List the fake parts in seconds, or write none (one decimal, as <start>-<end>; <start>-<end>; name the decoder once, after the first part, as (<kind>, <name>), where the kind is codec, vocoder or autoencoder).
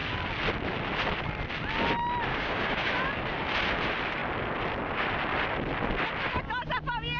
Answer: 2.3-2.9 (codec, DAC)